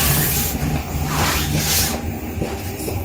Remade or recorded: recorded